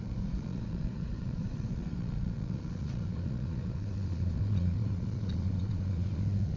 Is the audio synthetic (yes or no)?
yes